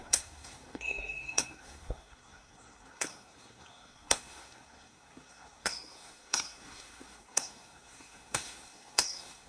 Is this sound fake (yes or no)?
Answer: yes